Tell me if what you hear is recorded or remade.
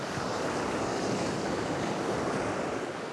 remade